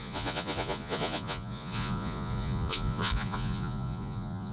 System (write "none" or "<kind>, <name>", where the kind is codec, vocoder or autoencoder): vocoder, Vocos